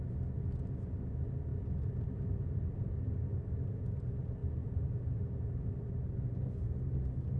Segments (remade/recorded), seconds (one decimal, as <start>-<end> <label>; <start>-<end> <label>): 0.0-7.4 recorded